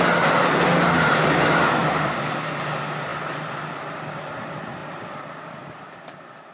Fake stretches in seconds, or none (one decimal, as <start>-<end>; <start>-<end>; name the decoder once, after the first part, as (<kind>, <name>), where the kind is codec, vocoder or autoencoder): 1.8-2.6 (vocoder, BigVGAN v2); 3.1-3.8; 4.8-5.6